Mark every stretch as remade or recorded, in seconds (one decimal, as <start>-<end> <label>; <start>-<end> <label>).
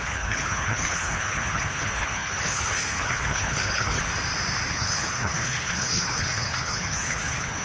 0.0-4.0 remade; 4.0-4.7 recorded; 4.7-7.6 remade